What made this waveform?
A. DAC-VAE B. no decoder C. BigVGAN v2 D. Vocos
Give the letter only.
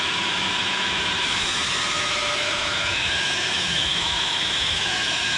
A